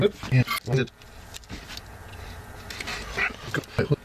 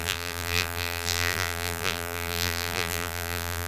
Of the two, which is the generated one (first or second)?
second